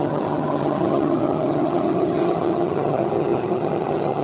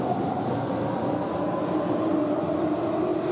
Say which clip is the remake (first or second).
first